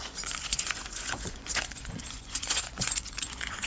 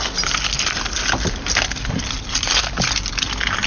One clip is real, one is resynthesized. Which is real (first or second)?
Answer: second